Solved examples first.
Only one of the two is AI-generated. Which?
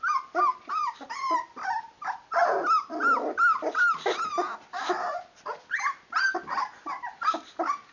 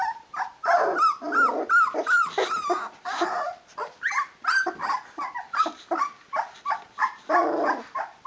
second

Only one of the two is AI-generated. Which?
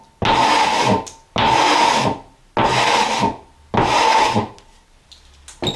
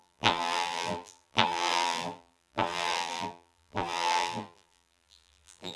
second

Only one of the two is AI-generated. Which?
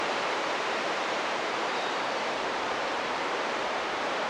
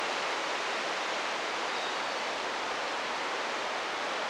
first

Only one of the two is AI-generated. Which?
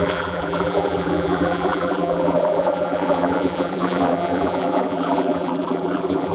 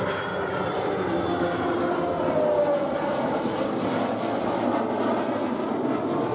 first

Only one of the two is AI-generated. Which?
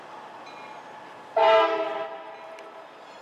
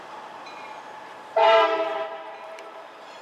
second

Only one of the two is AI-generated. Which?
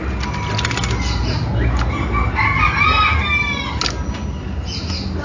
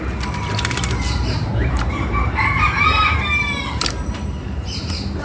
second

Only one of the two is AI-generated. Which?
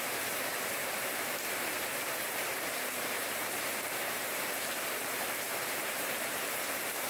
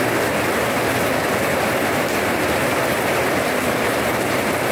first